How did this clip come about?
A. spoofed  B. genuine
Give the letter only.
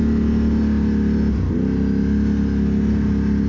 B